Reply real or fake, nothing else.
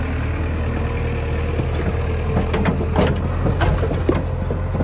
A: real